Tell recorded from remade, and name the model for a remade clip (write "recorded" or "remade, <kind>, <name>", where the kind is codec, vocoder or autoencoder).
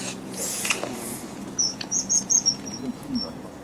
remade, vocoder, Vocos